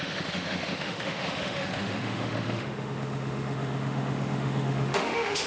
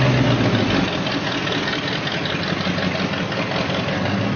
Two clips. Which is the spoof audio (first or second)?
first